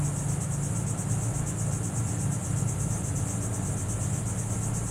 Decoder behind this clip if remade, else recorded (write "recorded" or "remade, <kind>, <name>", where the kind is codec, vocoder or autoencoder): recorded